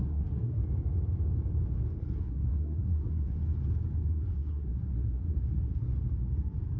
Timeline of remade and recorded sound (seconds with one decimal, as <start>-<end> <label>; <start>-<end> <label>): 0.0-0.6 remade; 0.6-2.0 recorded; 2.0-3.4 remade; 3.4-4.1 recorded; 4.1-5.9 remade; 5.9-6.8 recorded

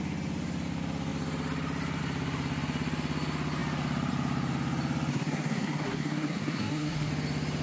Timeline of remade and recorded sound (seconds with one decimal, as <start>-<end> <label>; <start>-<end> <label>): 0.0-5.1 recorded; 5.1-7.1 remade; 7.1-7.6 recorded